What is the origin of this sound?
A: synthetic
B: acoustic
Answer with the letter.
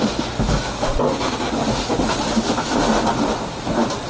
A